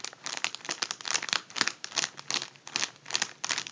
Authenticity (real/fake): real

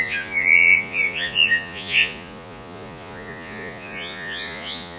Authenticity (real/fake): fake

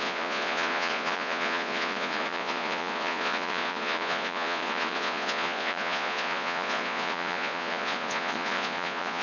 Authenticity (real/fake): fake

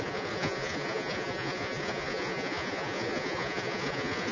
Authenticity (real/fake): fake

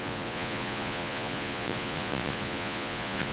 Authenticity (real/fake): fake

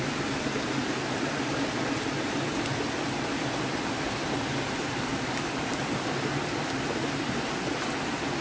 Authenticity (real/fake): real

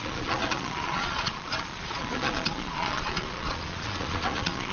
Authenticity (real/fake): fake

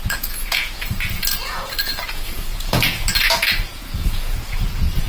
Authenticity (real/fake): fake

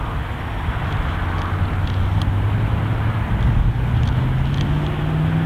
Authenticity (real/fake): real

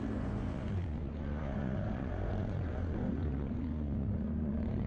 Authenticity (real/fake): fake